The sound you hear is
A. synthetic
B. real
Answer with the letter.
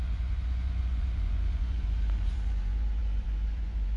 A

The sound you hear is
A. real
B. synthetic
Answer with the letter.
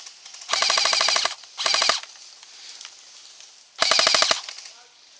A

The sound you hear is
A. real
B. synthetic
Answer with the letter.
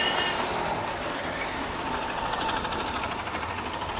A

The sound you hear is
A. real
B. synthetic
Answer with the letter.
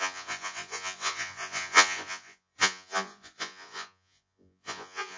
B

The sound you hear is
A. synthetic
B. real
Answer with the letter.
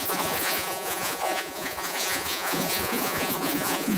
A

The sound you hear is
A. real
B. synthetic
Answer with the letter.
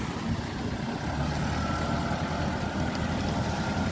A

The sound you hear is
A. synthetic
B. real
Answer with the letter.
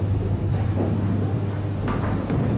B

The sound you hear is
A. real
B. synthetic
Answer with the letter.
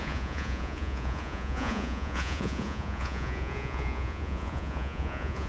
B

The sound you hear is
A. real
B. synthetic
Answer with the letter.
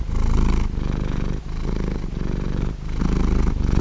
A